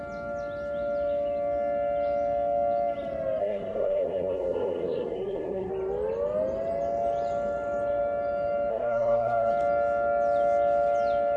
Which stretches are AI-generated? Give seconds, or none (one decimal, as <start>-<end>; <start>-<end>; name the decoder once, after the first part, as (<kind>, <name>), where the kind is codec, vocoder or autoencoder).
3.4-5.7 (codec, SNAC); 8.7-9.5